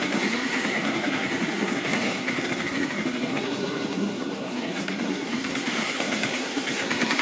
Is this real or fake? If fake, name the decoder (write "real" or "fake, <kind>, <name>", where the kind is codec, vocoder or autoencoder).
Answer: fake, codec, SNAC